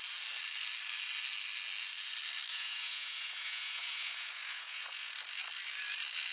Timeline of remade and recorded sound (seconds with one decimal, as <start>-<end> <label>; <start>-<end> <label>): 0.0-2.5 recorded; 2.5-5.1 remade; 5.1-6.3 recorded

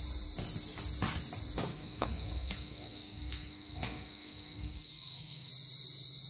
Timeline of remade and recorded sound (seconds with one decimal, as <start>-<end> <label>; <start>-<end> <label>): 0.0-1.7 recorded; 1.7-5.5 remade; 5.5-6.3 recorded

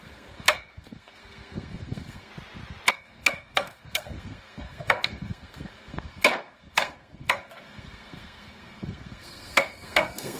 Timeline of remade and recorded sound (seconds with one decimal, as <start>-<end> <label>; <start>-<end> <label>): 0.0-2.3 remade; 2.3-2.9 recorded; 2.9-10.4 remade

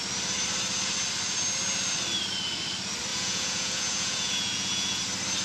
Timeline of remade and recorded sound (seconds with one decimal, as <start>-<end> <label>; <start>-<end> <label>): 0.0-3.1 recorded; 3.1-5.0 remade; 5.0-5.4 recorded

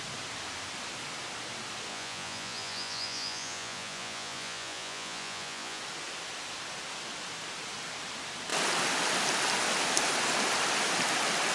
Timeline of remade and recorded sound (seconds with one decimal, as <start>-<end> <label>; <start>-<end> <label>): 0.0-1.9 recorded; 1.9-5.8 remade; 5.8-11.5 recorded

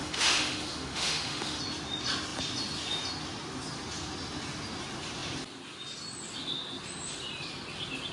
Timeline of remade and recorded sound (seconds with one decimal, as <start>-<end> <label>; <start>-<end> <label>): 0.0-1.6 remade; 1.6-8.1 recorded

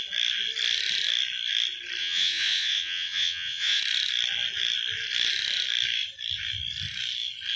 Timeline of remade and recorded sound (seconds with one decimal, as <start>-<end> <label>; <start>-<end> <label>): 0.0-2.0 recorded; 2.0-3.8 remade; 3.8-7.6 recorded